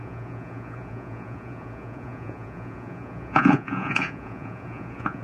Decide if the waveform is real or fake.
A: fake